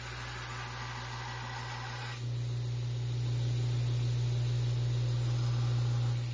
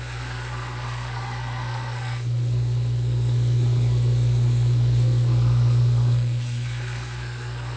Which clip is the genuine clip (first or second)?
first